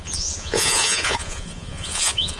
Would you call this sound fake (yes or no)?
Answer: yes